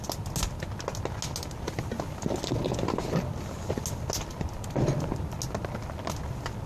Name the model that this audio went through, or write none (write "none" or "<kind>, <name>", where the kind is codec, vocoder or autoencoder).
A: none